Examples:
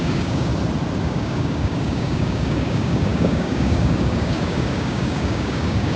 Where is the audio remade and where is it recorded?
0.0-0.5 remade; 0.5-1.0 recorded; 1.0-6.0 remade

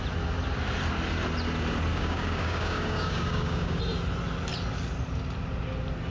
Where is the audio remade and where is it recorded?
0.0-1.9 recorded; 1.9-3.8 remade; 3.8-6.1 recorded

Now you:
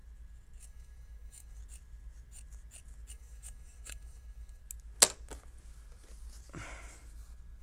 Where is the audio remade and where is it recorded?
0.0-0.6 recorded; 0.6-1.6 remade; 1.6-3.1 recorded; 3.1-4.6 remade; 4.6-7.6 recorded

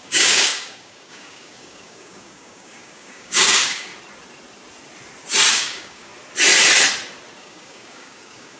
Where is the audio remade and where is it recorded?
0.0-3.9 remade; 3.9-5.5 recorded; 5.5-6.1 remade; 6.1-7.4 recorded; 7.4-8.6 remade

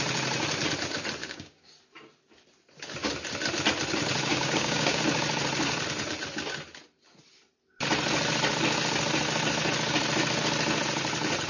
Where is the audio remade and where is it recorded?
0.0-1.2 recorded; 1.2-1.7 remade; 1.7-4.3 recorded; 4.3-5.0 remade; 5.0-11.5 recorded

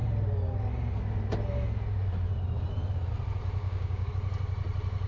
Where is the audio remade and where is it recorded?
0.0-3.6 recorded; 3.6-4.1 remade; 4.1-5.1 recorded